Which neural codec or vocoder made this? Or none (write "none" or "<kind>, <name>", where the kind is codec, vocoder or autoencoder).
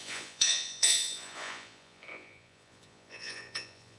vocoder, Vocos